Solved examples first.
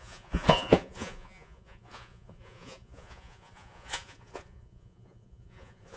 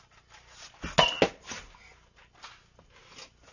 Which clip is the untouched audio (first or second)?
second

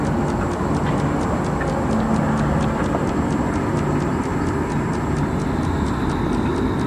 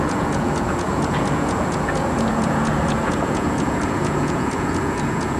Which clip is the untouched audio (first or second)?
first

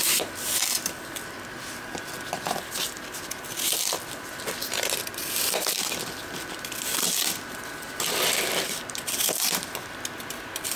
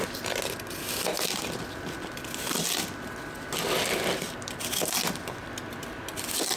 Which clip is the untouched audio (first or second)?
second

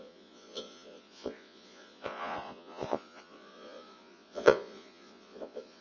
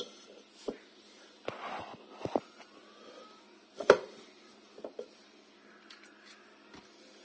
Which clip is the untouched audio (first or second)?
second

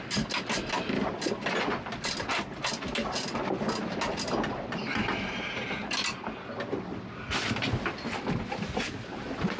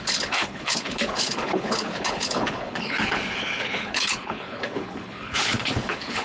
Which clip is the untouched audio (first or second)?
first